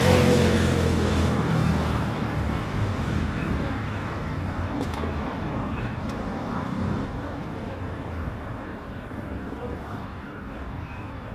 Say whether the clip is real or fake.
fake